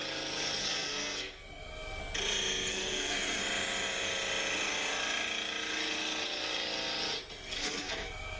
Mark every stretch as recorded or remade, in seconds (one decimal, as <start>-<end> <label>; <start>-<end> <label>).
0.0-0.6 recorded; 0.6-2.0 remade; 2.0-2.7 recorded; 2.7-3.4 remade; 3.4-7.5 recorded; 7.5-8.4 remade

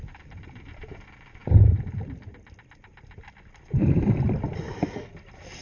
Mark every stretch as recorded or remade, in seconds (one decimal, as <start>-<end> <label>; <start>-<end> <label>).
0.0-5.6 recorded

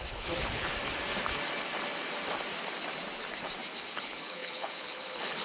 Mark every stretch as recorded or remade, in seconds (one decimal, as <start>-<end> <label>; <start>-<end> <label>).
0.0-0.7 remade; 0.7-3.9 recorded; 3.9-5.4 remade

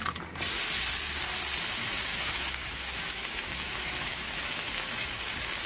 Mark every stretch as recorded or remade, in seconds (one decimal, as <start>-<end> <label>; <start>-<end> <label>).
0.0-2.1 recorded; 2.1-5.2 remade; 5.2-5.7 recorded

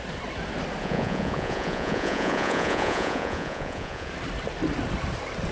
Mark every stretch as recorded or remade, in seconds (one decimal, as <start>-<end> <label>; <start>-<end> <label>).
0.0-0.8 recorded; 0.8-4.1 remade; 4.1-5.5 recorded

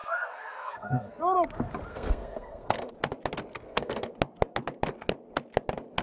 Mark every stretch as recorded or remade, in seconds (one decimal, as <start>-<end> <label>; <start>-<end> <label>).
0.0-1.2 remade; 1.2-1.9 recorded; 1.9-2.9 remade; 2.9-3.5 recorded; 3.5-4.1 remade; 4.1-6.0 recorded

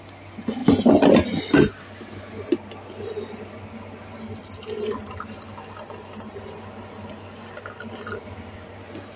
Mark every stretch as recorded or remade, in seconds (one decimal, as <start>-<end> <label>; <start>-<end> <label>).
0.0-9.2 recorded